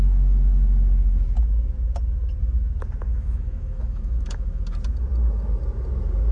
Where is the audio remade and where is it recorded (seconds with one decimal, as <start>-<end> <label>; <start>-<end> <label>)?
0.0-3.0 recorded; 3.0-4.6 remade; 4.6-6.3 recorded